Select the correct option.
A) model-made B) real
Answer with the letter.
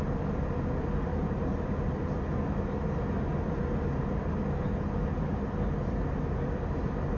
B